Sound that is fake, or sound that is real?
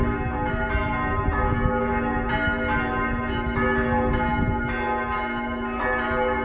real